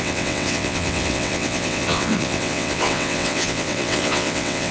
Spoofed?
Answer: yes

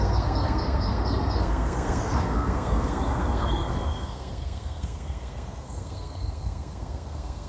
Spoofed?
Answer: yes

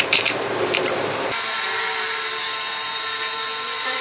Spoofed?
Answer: yes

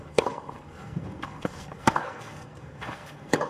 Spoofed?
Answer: yes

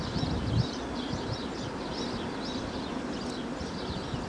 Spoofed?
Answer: no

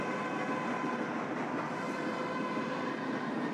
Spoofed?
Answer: no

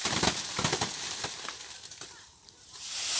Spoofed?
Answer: no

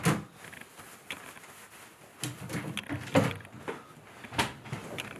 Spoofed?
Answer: no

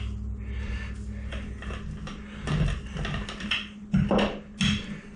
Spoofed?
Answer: no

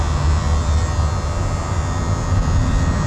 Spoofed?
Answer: no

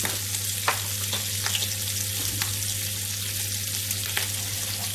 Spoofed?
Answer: no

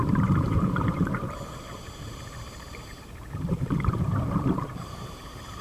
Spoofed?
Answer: yes